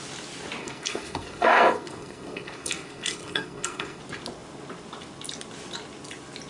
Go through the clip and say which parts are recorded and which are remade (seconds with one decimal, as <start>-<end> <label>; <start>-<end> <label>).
0.0-0.6 recorded; 0.6-4.0 remade; 4.0-6.5 recorded